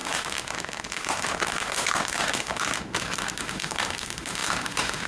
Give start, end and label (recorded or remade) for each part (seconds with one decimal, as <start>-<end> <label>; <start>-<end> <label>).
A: 0.0-5.1 remade